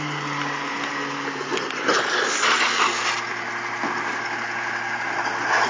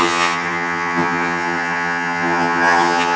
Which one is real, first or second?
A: first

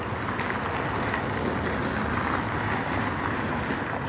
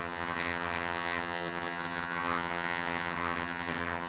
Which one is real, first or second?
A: first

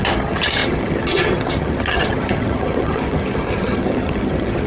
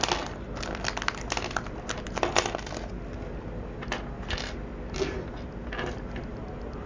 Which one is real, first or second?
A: second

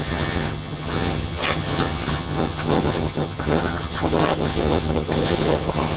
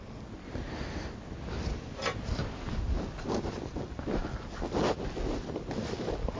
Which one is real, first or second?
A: second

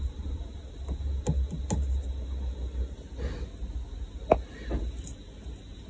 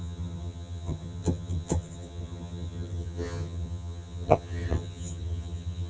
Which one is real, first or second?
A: first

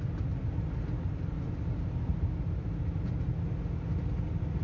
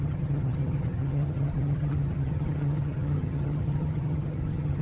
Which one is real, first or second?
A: first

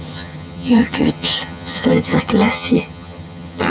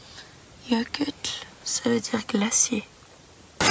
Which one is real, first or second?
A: second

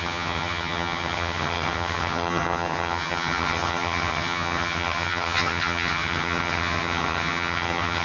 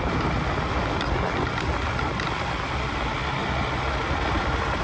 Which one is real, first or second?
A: second